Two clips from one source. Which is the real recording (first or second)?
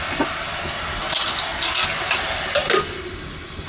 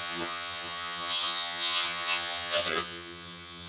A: first